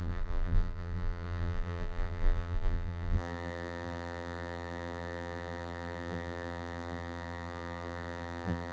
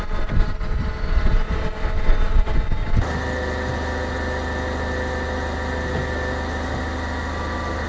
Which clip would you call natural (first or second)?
second